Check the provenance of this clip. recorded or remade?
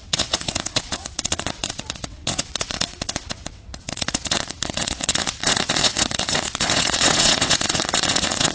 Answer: remade